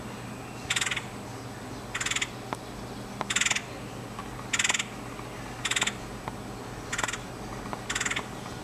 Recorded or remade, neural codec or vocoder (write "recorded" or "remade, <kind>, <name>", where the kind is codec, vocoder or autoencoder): recorded